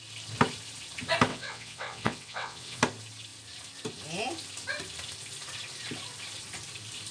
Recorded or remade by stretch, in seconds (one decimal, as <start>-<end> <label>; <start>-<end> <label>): 0.0-1.3 recorded; 1.3-2.8 remade; 2.8-7.1 recorded